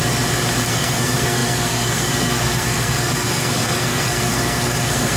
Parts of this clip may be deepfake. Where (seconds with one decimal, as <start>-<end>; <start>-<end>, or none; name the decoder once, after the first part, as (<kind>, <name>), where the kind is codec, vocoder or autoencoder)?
0.7-5.2 (codec, SNAC)